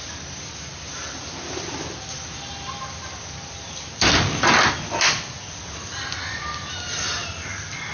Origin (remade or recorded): recorded